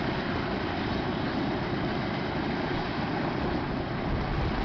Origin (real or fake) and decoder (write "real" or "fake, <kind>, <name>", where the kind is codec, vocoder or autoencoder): real